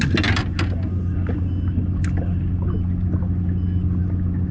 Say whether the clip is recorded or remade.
recorded